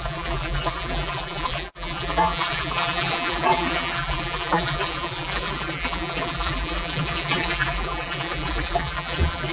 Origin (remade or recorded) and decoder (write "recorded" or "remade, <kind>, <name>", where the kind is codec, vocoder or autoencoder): remade, vocoder, BigVGAN v2